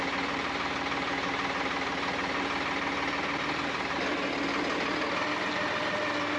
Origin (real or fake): real